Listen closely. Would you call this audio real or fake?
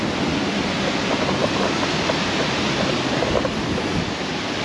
real